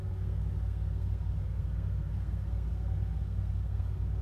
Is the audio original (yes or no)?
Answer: no